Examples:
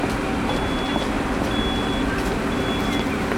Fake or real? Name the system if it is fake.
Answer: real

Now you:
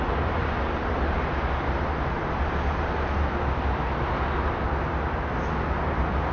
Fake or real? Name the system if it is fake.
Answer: real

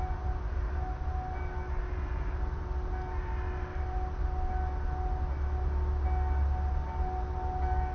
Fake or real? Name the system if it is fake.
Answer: real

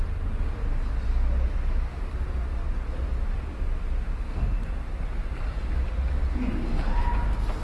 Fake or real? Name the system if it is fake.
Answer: real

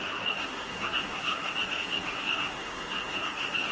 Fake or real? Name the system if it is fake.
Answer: fake, codec, SNAC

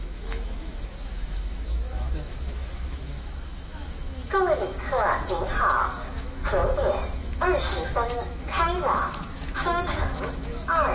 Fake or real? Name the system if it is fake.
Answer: fake, autoencoder, DAC-VAE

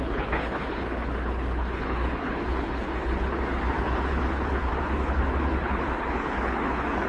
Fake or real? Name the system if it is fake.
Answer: fake, codec, HILCodec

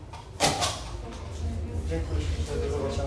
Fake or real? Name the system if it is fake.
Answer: real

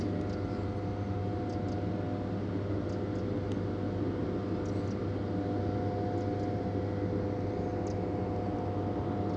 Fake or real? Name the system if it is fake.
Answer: real